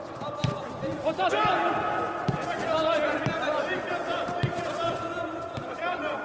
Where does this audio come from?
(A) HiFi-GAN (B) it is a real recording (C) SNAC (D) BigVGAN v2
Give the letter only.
B